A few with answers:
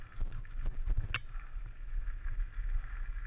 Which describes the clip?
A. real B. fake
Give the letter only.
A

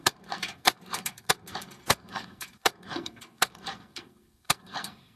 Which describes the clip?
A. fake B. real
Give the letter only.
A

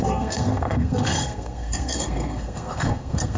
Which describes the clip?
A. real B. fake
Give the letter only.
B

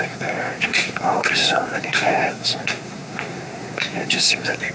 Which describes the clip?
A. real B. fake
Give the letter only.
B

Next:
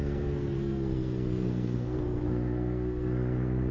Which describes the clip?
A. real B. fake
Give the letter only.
B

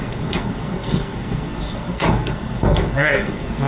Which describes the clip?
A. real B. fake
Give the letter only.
B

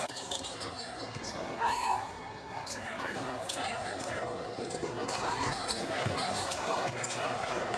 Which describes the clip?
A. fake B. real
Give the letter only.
A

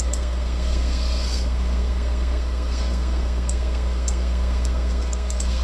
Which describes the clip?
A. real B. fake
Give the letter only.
B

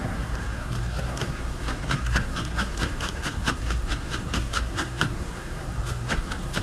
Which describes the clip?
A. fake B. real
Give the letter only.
A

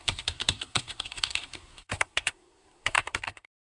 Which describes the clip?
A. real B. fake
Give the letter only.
B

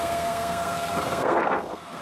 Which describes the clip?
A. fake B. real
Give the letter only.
A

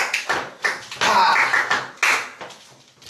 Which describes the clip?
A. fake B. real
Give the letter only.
B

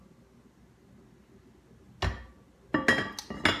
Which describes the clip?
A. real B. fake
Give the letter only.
A